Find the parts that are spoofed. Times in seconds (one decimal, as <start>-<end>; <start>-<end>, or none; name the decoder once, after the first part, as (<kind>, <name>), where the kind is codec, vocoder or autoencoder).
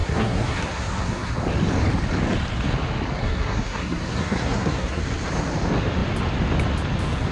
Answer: 0.0-1.3 (codec, SNAC); 3.2-5.0